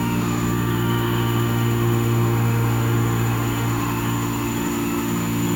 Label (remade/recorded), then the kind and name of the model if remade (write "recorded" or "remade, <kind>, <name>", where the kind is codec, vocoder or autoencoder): remade, autoencoder, DAC-VAE